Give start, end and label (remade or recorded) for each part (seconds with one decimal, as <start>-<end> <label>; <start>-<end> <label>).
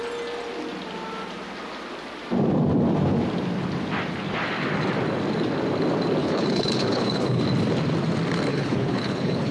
0.0-6.2 recorded; 6.2-7.4 remade; 7.4-8.5 recorded; 8.5-9.5 remade